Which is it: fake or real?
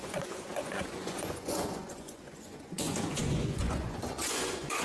fake